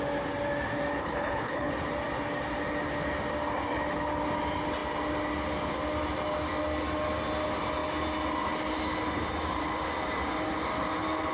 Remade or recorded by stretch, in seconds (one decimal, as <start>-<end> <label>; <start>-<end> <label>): 0.0-1.0 recorded; 1.0-1.7 remade; 1.7-11.3 recorded